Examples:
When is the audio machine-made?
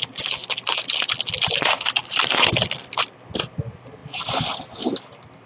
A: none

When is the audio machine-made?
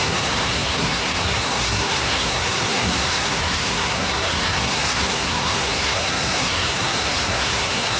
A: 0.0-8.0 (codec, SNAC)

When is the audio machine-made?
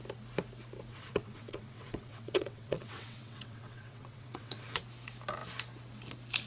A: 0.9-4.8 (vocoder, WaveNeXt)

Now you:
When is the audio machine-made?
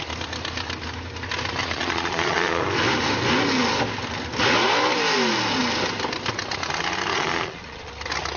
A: 1.6-2.6 (vocoder, Vocos); 7.1-7.9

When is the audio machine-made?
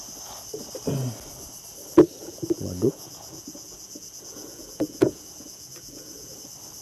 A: 2.2-6.3 (vocoder, Vocos)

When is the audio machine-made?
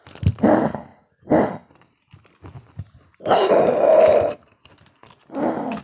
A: none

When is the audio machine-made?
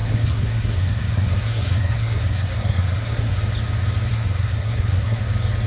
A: 0.0-3.4 (codec, SNAC); 4.1-5.2